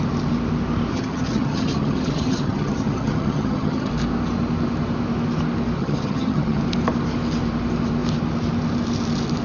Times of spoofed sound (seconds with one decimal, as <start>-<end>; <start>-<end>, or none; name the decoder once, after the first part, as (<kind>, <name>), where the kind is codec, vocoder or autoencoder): 0.9-3.9 (vocoder, HiFi-GAN); 5.8-6.6